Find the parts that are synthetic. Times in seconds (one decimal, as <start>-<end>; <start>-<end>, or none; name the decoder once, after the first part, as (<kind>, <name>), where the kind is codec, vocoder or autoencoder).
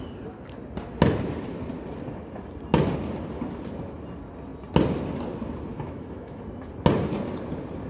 5.7-6.4 (autoencoder, DAC-VAE)